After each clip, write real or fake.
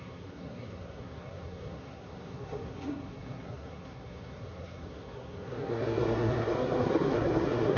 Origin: fake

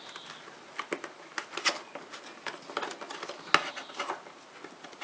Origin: real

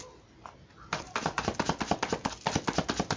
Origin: real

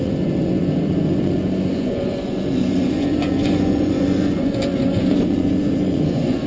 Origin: fake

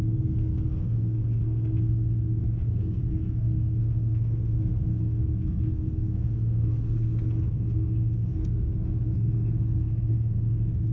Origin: fake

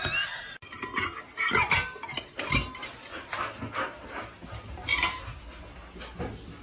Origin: real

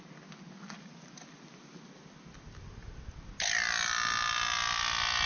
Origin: real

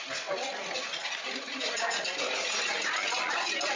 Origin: real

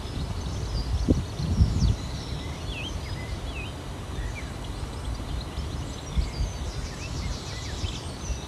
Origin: real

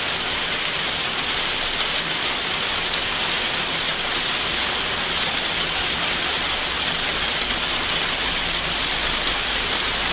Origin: real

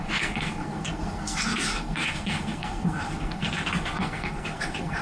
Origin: fake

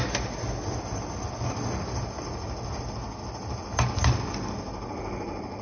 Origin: real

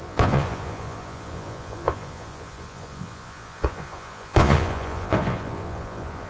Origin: fake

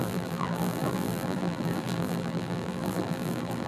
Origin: fake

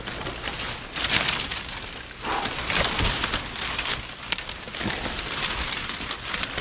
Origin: real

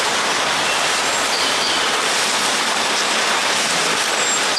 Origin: real